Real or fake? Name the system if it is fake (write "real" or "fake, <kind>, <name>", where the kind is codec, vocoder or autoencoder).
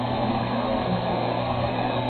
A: fake, codec, SNAC